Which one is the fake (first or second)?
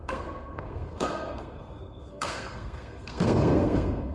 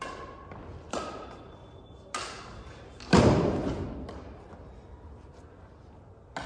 first